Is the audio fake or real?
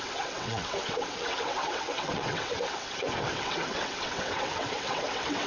fake